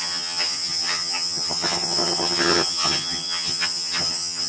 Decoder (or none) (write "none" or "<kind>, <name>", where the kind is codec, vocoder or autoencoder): vocoder, HiFi-GAN